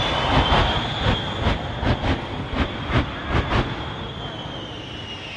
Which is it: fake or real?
fake